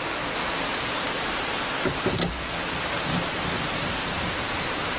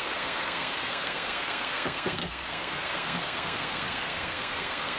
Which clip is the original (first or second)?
first